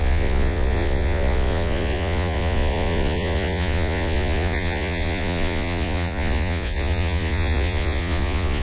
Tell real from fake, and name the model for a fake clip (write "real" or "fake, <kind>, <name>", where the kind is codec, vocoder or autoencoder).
fake, vocoder, Vocos